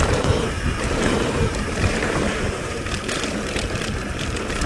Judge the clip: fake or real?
fake